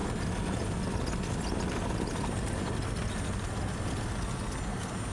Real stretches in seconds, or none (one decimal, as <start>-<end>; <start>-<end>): 0.0-5.1